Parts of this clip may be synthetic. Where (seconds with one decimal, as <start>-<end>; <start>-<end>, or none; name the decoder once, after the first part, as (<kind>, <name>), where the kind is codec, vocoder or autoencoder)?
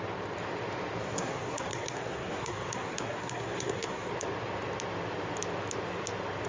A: 1.0-4.1 (codec, SNAC)